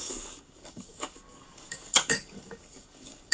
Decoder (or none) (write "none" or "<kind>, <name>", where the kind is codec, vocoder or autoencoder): codec, DAC